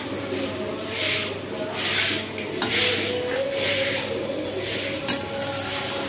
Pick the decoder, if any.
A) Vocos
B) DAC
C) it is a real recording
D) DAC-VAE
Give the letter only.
C